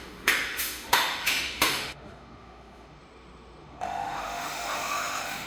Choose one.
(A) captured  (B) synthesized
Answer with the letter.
B